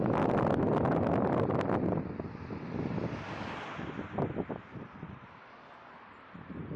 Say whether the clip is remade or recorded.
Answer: recorded